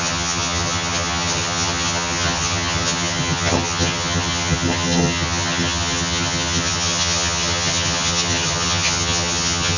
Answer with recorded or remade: remade